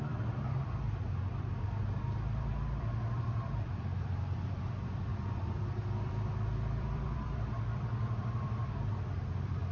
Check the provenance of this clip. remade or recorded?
remade